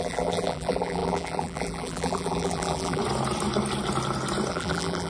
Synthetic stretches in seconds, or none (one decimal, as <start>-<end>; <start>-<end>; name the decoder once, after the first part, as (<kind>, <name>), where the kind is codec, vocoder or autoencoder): 0.0-3.0 (vocoder, BigVGAN v2); 4.5-5.1